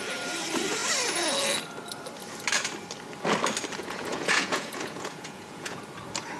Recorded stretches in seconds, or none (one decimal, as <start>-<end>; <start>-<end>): 0.0-3.8; 5.8-6.4